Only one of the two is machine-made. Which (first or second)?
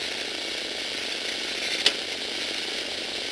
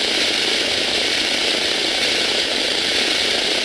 second